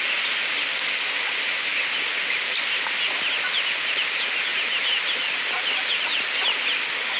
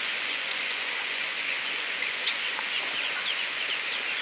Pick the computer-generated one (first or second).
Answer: second